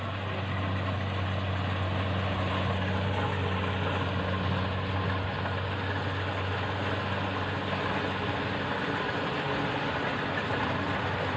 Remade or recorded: recorded